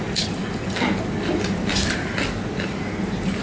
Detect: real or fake real